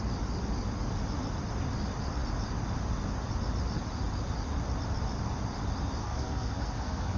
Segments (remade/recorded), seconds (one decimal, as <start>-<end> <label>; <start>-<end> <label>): 0.0-6.0 recorded; 6.0-7.2 remade